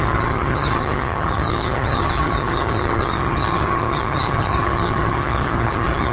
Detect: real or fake fake